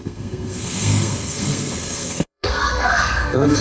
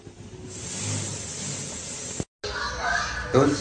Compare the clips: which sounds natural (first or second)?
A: second